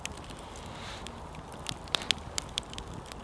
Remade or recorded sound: recorded